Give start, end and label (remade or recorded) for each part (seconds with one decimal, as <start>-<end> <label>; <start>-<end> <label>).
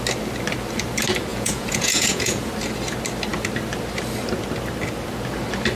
0.0-1.3 recorded; 1.3-2.5 remade; 2.5-5.7 recorded